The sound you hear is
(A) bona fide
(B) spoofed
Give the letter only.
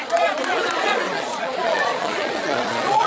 B